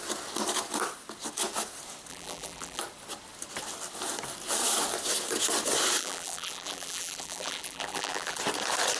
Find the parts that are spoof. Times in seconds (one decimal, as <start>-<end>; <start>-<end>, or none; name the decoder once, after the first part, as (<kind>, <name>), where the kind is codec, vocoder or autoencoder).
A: 2.1-2.8 (vocoder, BigVGAN v2); 6.0-8.4